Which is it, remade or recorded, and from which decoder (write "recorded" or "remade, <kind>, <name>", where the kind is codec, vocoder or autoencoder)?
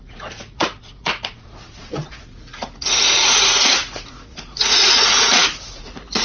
remade, vocoder, Vocos